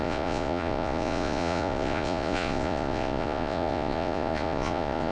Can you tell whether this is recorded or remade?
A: remade